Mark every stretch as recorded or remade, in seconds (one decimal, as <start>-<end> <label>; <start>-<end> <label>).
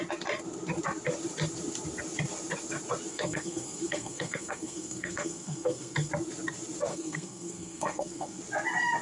0.0-3.1 recorded; 3.1-6.1 remade; 6.1-6.9 recorded; 6.9-8.4 remade; 8.4-9.0 recorded